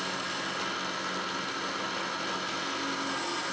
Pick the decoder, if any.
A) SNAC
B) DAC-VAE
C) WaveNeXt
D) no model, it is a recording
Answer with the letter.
D